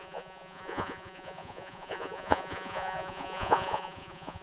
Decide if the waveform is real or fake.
fake